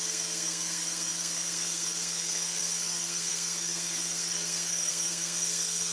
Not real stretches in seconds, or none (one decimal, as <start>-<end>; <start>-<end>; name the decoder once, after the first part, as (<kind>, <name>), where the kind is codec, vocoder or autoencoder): 0.0-5.9 (codec, SNAC)